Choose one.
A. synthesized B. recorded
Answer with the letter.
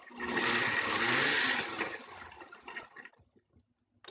B